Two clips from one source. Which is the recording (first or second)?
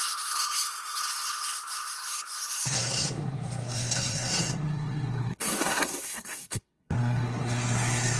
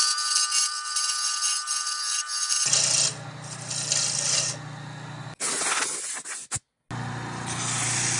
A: second